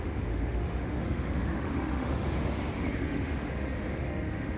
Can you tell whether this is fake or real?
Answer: fake